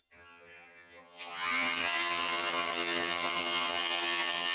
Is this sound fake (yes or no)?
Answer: yes